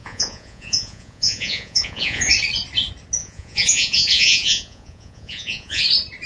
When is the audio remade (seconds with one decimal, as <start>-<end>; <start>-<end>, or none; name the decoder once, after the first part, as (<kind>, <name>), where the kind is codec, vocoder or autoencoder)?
0.0-2.2 (vocoder, Vocos); 3.2-5.8